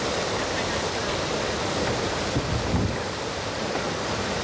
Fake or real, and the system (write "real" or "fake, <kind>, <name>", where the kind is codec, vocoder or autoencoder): fake, vocoder, BigVGAN v2